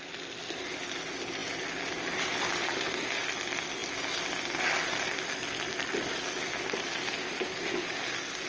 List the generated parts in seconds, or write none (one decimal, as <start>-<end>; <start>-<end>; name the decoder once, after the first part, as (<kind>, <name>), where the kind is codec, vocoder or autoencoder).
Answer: none